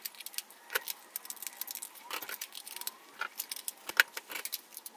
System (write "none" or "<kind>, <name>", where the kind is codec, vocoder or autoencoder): none